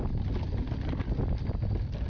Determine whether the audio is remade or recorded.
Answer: recorded